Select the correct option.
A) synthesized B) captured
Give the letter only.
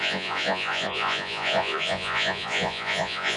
A